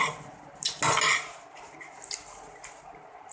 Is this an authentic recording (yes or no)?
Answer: yes